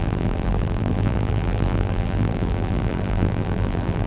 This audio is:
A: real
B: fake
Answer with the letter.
B